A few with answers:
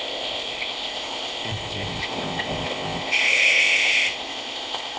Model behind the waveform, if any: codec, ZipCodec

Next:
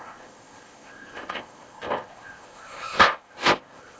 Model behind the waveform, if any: codec, ZipCodec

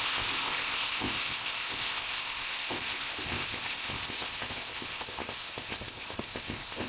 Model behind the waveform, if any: codec, ZipCodec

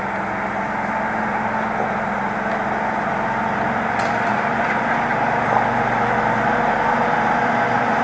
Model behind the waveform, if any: none